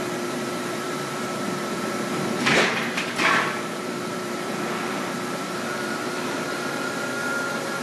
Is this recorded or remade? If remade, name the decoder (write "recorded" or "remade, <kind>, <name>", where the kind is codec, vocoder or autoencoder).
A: remade, vocoder, BigVGAN v2